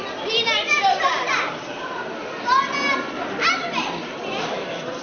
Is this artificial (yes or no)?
no